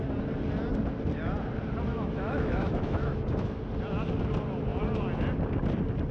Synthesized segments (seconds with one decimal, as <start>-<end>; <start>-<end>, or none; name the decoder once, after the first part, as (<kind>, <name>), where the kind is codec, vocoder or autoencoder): 1.9-3.6 (autoencoder, DAC-VAE)